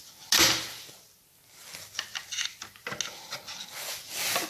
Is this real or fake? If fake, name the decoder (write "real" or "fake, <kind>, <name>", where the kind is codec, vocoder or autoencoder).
real